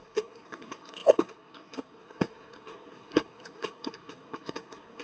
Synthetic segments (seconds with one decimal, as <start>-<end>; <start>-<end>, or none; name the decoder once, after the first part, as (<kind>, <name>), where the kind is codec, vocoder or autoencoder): 0.0-5.0 (codec, SNAC)